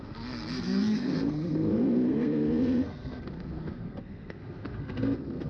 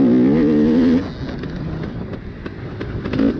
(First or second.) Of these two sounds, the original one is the second